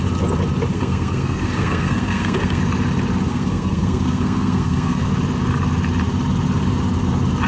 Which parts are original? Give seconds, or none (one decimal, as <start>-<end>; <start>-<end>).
0.0-0.7; 2.6-3.3; 5.1-7.5